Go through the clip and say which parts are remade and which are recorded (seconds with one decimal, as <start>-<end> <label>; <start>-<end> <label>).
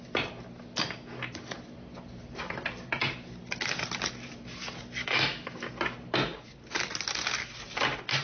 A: 0.0-5.0 recorded; 5.0-5.7 remade; 5.7-8.2 recorded